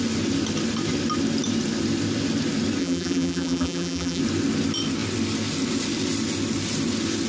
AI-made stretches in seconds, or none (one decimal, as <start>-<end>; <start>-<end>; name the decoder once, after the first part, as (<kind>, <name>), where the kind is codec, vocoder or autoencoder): 2.8-4.2 (vocoder, BigVGAN v2)